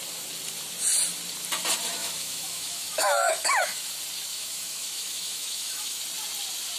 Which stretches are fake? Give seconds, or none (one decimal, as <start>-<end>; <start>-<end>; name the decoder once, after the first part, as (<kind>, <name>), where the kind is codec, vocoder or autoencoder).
2.0-3.9 (autoencoder, DAC-VAE); 4.3-6.0